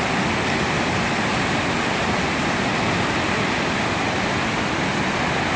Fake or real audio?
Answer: real